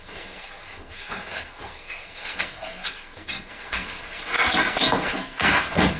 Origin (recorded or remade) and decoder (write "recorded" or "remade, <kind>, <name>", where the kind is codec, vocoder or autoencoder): remade, codec, SNAC